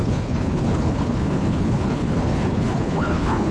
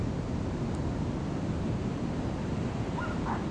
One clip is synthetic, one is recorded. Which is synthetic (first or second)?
first